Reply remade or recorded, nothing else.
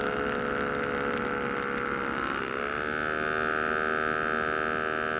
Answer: recorded